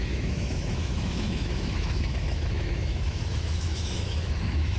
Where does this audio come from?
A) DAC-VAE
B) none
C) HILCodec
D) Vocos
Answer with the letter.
A